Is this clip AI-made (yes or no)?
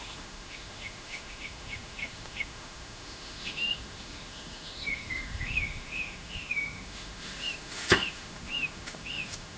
yes